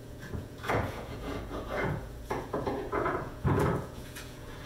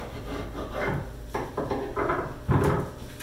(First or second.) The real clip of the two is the second